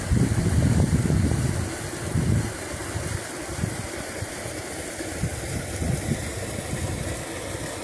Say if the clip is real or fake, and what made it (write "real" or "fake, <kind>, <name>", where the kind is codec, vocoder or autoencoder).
real